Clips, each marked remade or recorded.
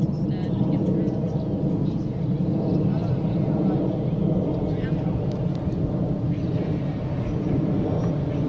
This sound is recorded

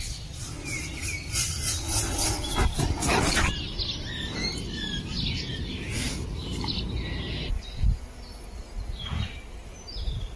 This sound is recorded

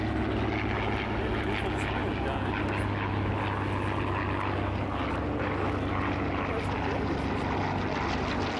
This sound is recorded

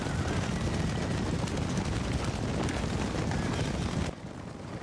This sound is recorded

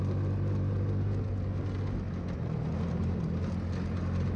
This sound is recorded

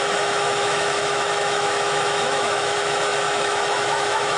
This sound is remade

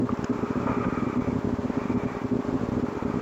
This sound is recorded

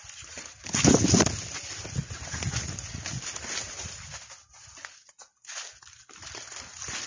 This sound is recorded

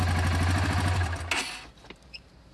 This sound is recorded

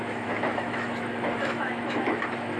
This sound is remade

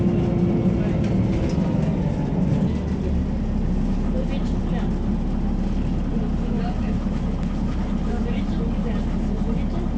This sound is recorded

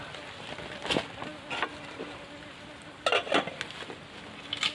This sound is recorded